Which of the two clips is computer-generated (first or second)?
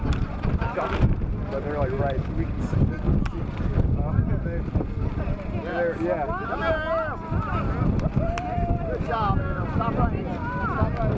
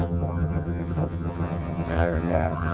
second